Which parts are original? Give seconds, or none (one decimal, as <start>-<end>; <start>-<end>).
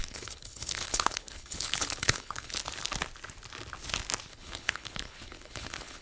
2.6-4.3